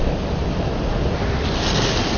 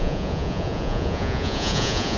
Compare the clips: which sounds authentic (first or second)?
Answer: first